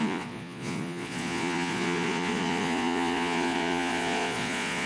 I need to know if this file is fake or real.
fake